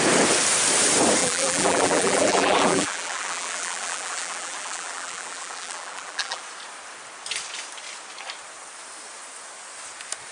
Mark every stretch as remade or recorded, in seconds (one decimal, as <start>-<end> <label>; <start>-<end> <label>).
0.0-1.2 recorded; 1.2-6.4 remade; 6.4-10.3 recorded